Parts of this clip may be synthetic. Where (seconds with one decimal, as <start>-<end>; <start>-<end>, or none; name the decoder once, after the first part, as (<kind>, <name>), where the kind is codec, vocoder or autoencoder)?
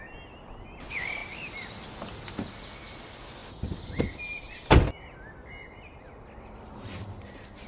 none